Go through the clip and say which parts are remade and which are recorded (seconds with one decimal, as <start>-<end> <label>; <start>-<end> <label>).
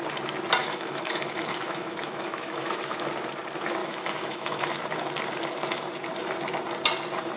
0.0-0.6 recorded; 0.6-3.1 remade; 3.1-3.8 recorded; 3.8-4.7 remade; 4.7-7.4 recorded